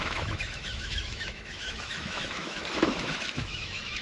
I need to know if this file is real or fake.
fake